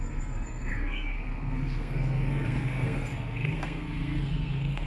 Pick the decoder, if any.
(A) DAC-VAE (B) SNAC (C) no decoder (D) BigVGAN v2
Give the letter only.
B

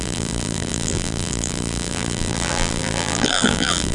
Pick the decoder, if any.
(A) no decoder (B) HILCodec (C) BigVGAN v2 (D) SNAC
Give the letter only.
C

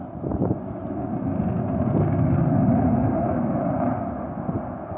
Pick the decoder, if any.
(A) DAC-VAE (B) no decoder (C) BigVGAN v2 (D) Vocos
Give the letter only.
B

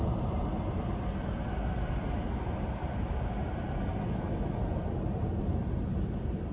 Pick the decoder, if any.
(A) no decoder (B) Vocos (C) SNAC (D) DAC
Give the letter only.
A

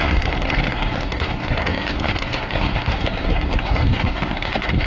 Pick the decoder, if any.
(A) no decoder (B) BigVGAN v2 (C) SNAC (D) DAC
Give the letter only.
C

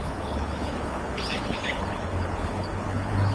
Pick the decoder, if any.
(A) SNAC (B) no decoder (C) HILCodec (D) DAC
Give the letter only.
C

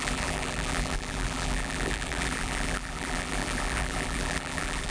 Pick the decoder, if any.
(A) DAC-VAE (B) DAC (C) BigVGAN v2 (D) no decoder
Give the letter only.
C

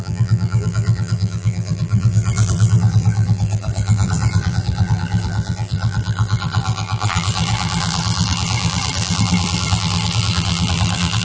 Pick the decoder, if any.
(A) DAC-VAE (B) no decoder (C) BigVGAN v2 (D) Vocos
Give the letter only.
C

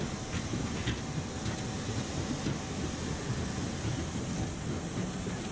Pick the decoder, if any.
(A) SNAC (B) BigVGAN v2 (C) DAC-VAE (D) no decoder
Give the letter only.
D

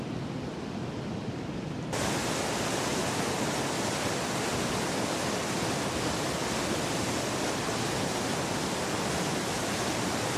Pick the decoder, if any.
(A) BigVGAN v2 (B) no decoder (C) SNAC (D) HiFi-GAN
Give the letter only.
B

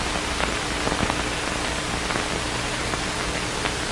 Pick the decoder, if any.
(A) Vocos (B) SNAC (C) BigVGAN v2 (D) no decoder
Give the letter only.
D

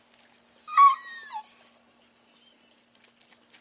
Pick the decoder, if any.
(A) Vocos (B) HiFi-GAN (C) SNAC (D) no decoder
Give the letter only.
D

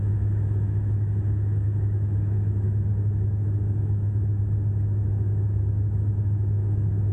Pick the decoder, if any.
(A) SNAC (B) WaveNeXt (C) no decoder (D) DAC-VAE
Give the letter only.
D